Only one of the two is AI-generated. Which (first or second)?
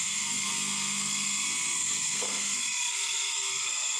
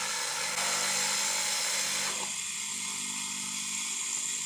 first